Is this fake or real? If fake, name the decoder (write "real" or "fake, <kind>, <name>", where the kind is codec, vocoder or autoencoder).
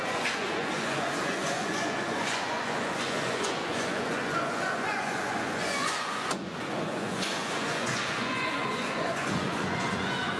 fake, vocoder, Vocos